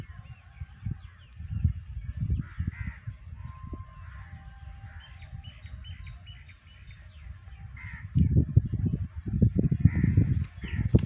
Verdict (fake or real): real